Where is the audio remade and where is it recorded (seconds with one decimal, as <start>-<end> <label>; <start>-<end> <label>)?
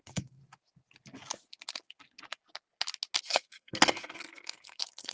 0.0-0.4 remade; 0.4-3.2 recorded; 3.2-5.1 remade